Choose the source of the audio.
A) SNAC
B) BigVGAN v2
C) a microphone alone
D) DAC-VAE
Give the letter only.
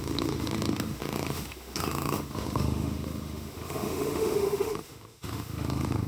D